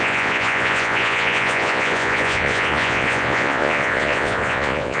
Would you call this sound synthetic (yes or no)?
yes